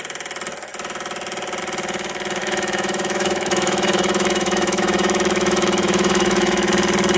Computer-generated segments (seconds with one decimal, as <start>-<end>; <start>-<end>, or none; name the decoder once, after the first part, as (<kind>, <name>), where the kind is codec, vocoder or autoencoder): 2.4-6.7 (autoencoder, DAC-VAE)